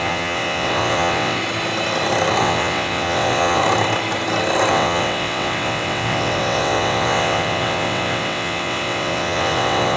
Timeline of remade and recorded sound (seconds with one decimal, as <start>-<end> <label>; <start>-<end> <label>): 0.0-1.4 remade; 1.4-2.4 recorded; 2.4-3.6 remade; 3.6-4.7 recorded; 4.7-10.0 remade